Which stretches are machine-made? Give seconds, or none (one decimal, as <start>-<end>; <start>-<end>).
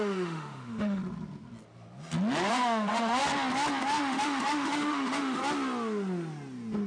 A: 0.0-1.0; 2.5-3.2; 3.8-5.4